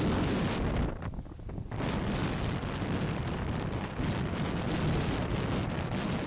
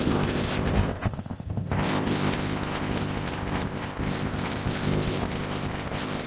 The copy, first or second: second